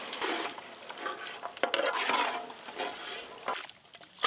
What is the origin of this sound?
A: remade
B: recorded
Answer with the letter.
B